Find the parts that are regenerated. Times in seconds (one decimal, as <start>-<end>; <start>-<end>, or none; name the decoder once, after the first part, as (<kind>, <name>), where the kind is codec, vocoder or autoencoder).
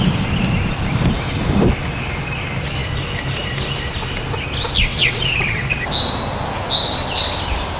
4.9-5.9 (vocoder, WaveNeXt)